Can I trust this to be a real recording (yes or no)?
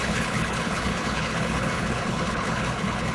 no